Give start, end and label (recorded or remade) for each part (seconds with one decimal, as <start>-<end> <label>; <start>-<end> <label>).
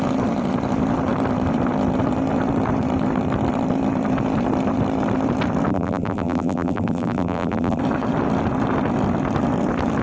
0.0-5.7 recorded; 5.7-7.8 remade; 7.8-10.0 recorded